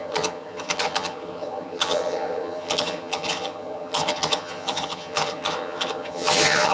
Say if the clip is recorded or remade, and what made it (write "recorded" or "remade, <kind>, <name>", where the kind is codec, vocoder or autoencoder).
remade, vocoder, HiFi-GAN